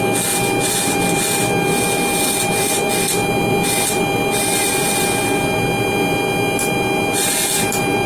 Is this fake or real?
real